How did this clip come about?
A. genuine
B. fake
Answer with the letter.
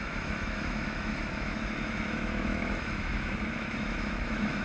B